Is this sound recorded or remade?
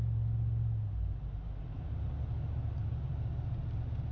recorded